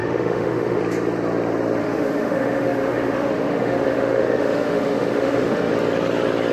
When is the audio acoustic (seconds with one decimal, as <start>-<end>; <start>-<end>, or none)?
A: 0.8-1.8; 5.7-6.5